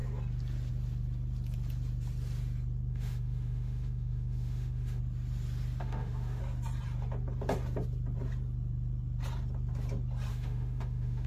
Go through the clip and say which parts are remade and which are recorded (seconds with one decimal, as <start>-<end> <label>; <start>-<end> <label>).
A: 0.0-2.9 recorded; 2.9-5.0 remade; 5.0-5.8 recorded; 5.8-6.4 remade; 6.4-10.3 recorded; 10.3-11.3 remade